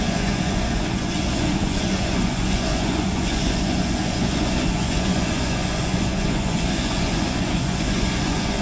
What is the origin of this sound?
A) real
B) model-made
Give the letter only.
B